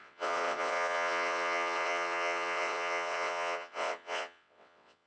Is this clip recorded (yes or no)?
no